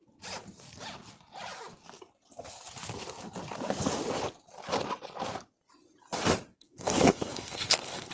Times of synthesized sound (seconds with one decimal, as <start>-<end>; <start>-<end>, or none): 6.5-8.1